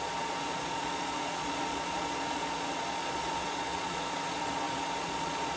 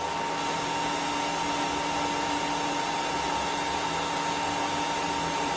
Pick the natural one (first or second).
second